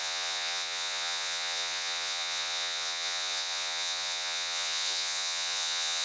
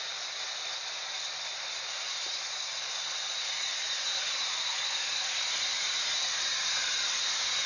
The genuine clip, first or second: second